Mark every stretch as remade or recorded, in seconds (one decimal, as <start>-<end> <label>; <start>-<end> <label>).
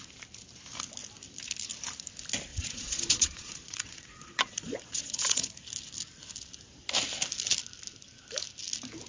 0.0-2.5 recorded; 2.5-5.5 remade; 5.5-9.1 recorded